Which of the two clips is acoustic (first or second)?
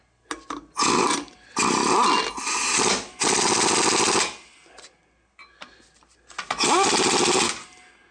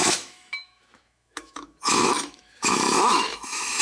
first